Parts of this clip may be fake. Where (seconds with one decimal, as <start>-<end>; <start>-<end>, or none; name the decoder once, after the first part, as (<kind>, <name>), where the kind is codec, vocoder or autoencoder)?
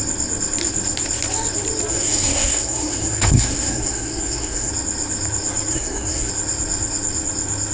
1.9-4.7 (codec, SNAC); 5.7-6.3